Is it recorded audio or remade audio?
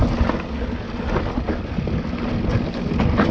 recorded